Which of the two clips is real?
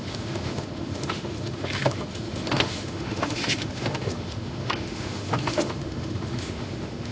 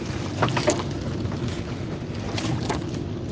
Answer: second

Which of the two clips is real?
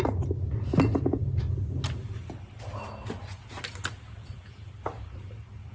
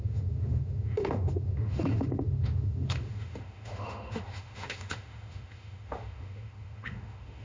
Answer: first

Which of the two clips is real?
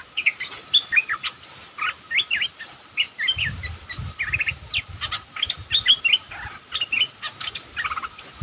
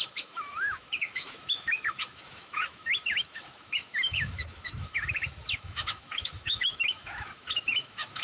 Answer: first